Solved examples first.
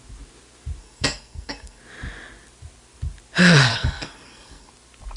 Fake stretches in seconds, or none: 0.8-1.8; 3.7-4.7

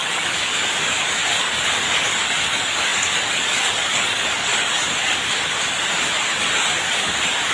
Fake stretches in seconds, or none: 0.0-7.5

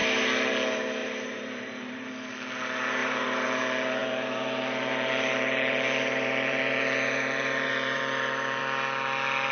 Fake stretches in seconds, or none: 1.0-2.1; 3.0-3.6; 4.0-8.6

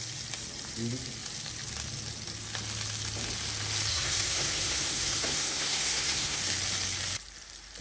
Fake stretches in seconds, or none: 3.9-6.4